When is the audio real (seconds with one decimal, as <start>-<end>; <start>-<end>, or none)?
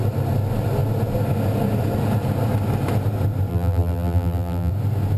0.0-3.5; 4.7-5.2